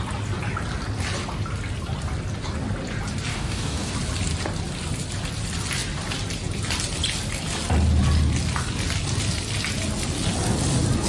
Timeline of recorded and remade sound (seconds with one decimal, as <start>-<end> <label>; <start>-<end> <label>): 0.0-3.3 recorded; 3.3-3.9 remade; 3.9-11.1 recorded